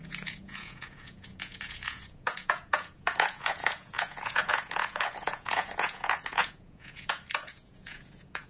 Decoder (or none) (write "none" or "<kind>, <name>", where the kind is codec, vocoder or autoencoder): vocoder, Vocos